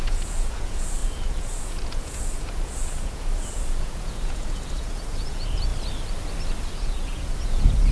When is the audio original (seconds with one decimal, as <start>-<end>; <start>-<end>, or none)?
5.7-6.7